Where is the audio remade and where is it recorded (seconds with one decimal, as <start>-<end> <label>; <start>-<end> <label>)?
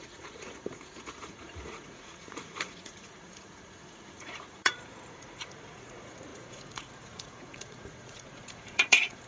0.0-9.3 remade